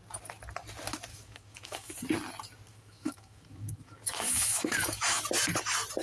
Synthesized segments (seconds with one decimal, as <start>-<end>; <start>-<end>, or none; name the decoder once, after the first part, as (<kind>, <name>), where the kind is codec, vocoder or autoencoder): 1.1-1.9 (autoencoder, DAC-VAE); 2.7-5.2